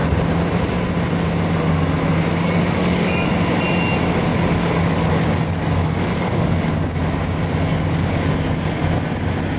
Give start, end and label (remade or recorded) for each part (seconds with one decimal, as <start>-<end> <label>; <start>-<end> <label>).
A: 0.0-2.3 recorded; 2.3-3.3 remade; 3.3-4.3 recorded; 4.3-6.7 remade; 6.7-7.7 recorded; 7.7-8.8 remade; 8.8-9.6 recorded